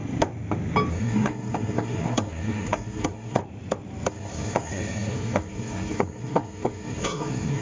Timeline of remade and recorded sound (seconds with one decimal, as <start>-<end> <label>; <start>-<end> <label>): 0.0-0.9 recorded; 0.9-3.4 remade; 3.4-4.1 recorded; 4.1-7.6 remade